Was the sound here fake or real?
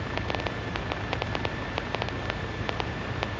fake